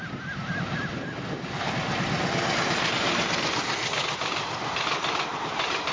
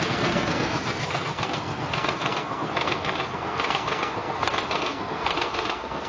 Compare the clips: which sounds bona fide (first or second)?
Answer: first